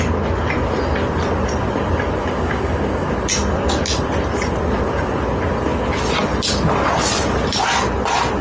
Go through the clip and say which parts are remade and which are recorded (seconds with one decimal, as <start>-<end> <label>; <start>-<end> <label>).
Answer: 0.0-2.2 recorded; 2.2-3.1 remade; 3.1-8.4 recorded